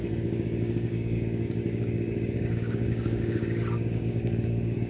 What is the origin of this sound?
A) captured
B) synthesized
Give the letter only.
B